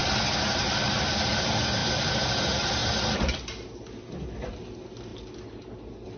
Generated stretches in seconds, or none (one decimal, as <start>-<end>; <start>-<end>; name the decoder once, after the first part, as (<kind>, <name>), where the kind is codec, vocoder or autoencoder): 1.8-2.3 (vocoder, BigVGAN v2)

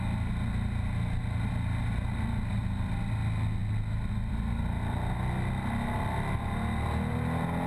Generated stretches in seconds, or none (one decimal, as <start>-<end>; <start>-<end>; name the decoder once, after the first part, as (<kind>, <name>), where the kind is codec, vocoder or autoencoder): none

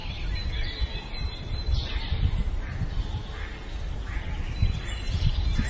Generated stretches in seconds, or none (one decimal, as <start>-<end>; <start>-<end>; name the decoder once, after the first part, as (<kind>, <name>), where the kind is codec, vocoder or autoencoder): none

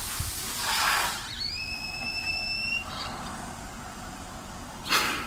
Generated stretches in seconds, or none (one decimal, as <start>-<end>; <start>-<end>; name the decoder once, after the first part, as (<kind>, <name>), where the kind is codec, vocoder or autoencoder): none

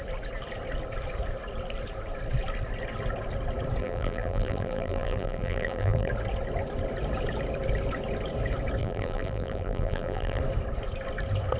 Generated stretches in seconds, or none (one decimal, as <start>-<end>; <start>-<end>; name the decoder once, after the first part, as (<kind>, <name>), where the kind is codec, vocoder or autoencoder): 3.8-6.1 (vocoder, BigVGAN v2); 8.8-10.4

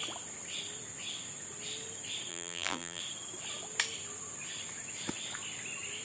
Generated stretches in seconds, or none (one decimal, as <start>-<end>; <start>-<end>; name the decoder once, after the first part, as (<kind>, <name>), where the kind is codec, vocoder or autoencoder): 2.3-3.0 (vocoder, BigVGAN v2)

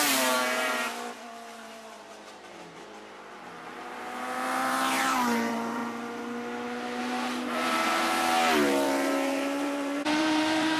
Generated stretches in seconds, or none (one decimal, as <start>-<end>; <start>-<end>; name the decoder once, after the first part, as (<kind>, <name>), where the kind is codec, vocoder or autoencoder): 0.0-5.8 (vocoder, BigVGAN v2); 7.0-10.8